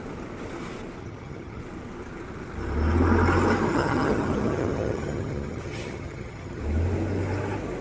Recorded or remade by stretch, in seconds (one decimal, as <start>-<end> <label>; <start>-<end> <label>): 0.0-1.0 recorded; 1.0-1.6 remade; 1.6-3.7 recorded; 3.7-6.6 remade; 6.6-7.8 recorded